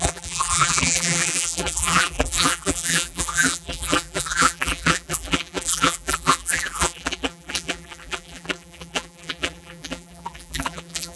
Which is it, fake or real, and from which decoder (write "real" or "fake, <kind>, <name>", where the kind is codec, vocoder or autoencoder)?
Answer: fake, vocoder, BigVGAN v2